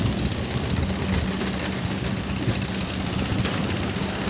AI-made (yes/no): no